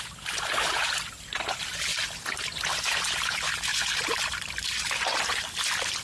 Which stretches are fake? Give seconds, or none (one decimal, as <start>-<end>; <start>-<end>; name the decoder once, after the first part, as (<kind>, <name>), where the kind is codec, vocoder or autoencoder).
3.7-5.2 (vocoder, BigVGAN v2)